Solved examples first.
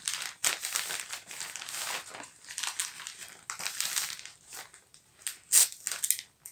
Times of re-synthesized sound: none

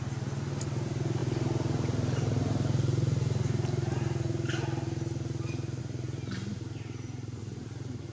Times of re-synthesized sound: none

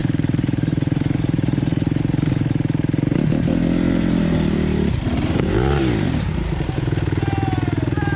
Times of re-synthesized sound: 0.0-2.0 (vocoder, BigVGAN v2); 3.1-6.3

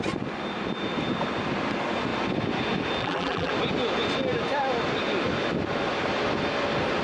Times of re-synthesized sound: 3.0-3.5 (vocoder, BigVGAN v2)

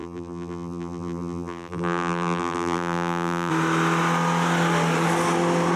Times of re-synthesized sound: 0.0-3.5 (vocoder, BigVGAN v2)